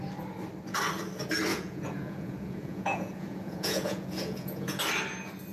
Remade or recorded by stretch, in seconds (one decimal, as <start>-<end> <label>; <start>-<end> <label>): 0.0-1.5 recorded; 1.5-4.8 remade; 4.8-5.5 recorded